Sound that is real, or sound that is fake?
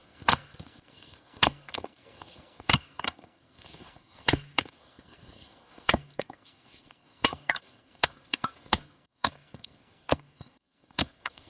fake